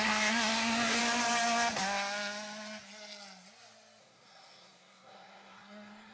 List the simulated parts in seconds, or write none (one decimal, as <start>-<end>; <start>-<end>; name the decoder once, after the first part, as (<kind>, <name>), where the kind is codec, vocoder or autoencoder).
0.0-1.0 (codec, SNAC); 4.0-6.1